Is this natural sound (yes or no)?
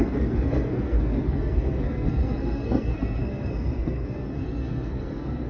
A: no